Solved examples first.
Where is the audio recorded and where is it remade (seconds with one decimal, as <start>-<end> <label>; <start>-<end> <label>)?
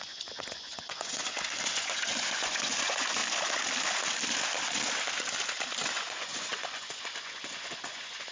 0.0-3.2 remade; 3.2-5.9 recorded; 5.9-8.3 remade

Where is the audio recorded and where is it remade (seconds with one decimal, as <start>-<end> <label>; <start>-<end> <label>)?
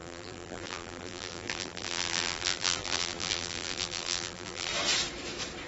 0.0-4.7 remade; 4.7-5.7 recorded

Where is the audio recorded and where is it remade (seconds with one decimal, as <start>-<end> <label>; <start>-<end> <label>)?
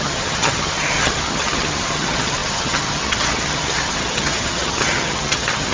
0.0-5.7 remade